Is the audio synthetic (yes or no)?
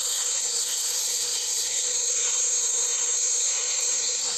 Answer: yes